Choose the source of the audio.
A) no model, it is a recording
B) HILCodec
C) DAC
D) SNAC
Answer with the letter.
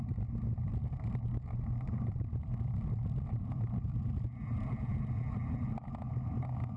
A